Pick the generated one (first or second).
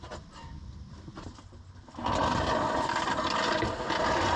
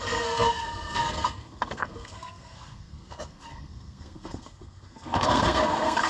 second